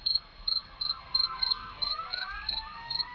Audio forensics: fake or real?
fake